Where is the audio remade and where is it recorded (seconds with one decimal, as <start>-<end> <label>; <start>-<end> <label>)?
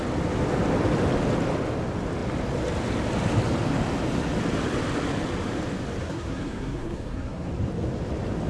0.0-6.0 recorded; 6.0-7.5 remade; 7.5-8.5 recorded